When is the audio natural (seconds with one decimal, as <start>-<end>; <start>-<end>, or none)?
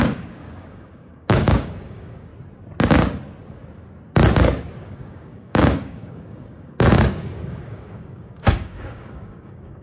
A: 2.3-4.8